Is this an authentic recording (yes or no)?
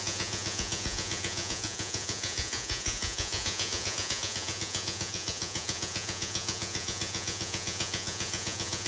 no